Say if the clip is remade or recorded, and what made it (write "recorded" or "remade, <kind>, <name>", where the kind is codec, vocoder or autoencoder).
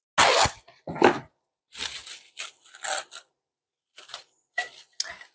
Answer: recorded